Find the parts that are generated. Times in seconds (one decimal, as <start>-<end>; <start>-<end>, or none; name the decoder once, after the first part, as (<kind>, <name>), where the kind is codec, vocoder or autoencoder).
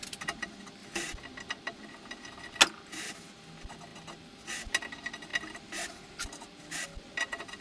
none